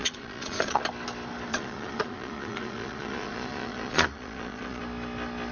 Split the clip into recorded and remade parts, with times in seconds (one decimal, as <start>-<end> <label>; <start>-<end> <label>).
0.0-0.8 remade; 0.8-1.5 recorded; 1.5-4.8 remade; 4.8-5.5 recorded